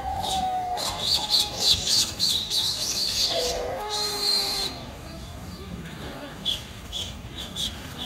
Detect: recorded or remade remade